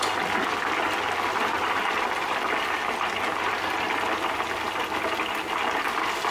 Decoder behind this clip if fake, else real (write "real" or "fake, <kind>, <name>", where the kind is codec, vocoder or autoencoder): real